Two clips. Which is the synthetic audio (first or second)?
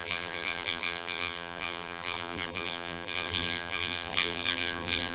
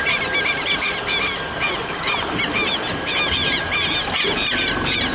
first